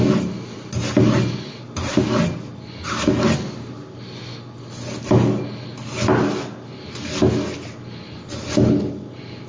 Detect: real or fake real